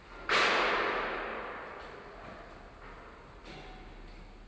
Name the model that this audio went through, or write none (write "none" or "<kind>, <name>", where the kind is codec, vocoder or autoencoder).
none